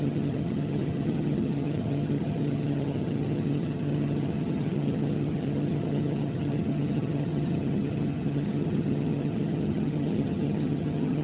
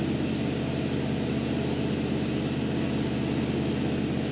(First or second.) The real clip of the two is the second